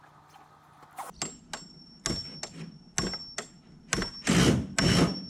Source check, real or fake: real